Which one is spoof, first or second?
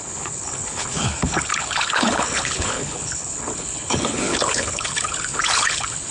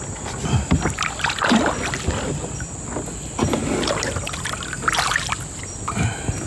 first